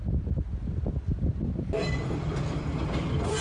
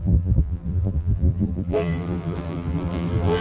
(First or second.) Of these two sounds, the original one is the first